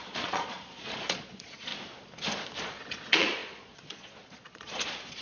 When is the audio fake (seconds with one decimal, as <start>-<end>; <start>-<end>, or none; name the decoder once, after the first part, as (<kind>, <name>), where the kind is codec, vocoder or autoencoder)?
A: 0.0-1.7 (vocoder, Vocos); 2.6-5.2